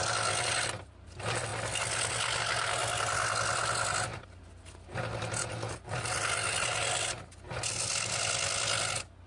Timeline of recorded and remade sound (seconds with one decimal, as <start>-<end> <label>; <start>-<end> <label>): 0.0-9.3 recorded